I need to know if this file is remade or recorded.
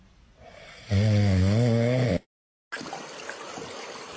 recorded